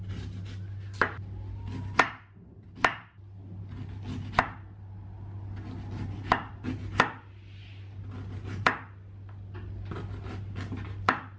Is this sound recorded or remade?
recorded